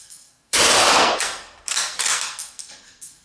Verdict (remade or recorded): remade